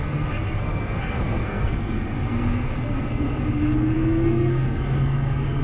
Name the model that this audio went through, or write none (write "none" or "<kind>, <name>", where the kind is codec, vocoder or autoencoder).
codec, SNAC